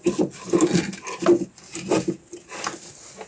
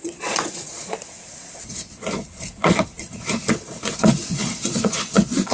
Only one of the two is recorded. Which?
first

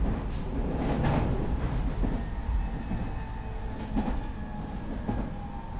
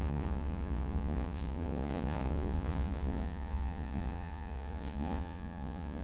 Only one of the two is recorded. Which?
first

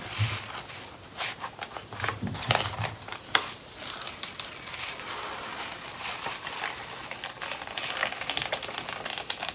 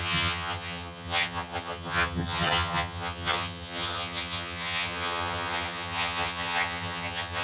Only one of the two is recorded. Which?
first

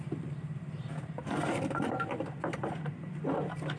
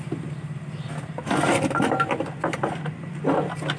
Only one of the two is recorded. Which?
second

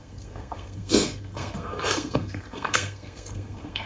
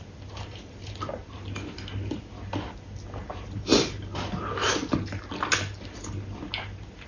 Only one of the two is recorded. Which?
second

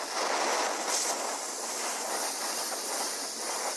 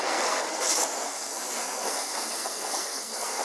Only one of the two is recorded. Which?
first